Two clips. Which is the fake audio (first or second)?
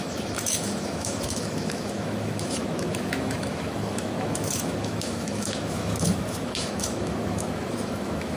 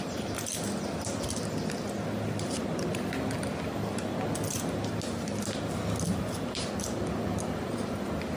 first